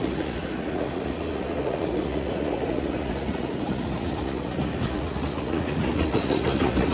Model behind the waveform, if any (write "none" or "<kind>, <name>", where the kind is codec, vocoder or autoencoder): vocoder, Vocos